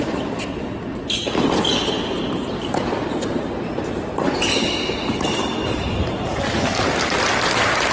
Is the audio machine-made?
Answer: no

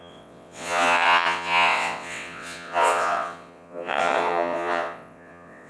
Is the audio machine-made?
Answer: yes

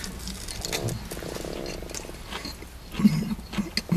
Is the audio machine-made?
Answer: no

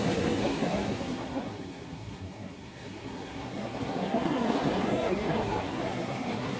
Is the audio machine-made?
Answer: yes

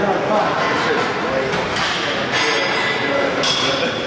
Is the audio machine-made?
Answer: no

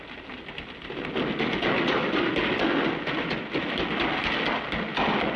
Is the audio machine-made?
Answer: no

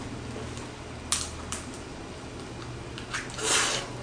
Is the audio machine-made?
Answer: no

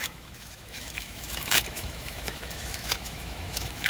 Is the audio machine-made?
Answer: yes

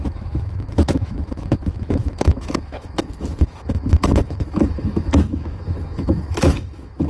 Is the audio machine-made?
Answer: yes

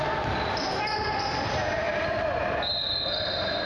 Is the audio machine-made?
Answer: no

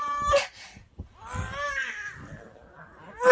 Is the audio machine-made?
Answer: no